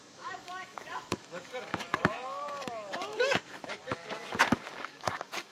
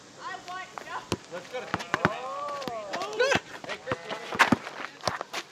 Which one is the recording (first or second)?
second